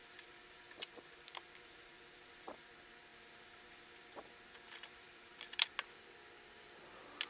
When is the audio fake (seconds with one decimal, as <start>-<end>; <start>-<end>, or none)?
0.0-2.7; 3.1-5.7